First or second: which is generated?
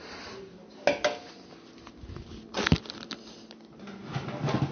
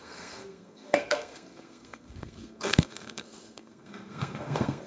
second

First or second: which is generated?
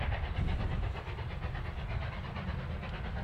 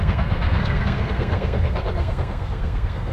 second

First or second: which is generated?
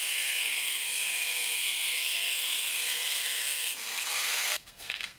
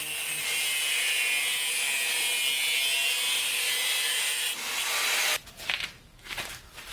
first